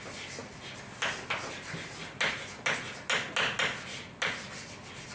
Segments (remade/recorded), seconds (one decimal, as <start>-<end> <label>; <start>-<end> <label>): 0.0-5.1 recorded